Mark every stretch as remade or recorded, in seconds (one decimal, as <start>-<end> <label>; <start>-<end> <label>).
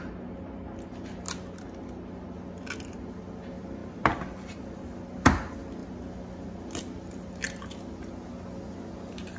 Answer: 0.0-3.8 recorded; 3.8-5.0 remade; 5.0-9.4 recorded